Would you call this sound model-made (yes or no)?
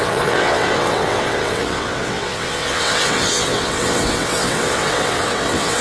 yes